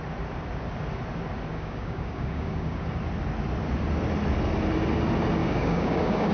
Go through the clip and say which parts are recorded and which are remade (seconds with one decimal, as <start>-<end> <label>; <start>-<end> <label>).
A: 0.0-1.5 recorded; 1.5-3.0 remade; 3.0-5.4 recorded; 5.4-6.3 remade